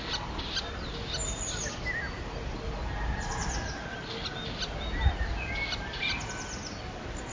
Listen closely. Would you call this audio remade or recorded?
recorded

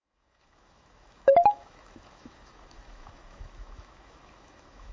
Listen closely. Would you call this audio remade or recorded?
remade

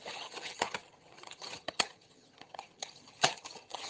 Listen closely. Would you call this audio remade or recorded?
remade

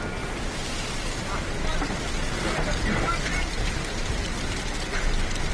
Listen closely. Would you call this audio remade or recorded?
recorded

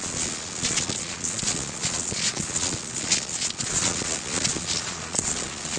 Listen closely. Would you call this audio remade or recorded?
remade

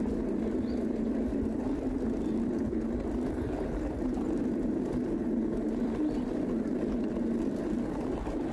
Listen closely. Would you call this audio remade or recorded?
recorded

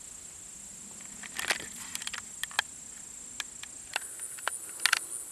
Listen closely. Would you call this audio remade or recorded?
recorded